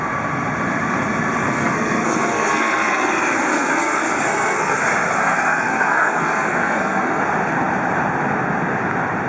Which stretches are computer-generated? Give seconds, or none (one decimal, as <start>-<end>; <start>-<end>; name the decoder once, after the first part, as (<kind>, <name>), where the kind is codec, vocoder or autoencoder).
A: 1.4-3.1 (codec, SNAC); 3.5-4.8; 5.2-7.2